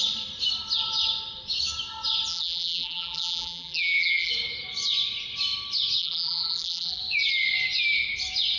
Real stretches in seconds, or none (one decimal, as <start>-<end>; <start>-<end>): 0.0-2.3; 4.3-6.0; 7.0-8.6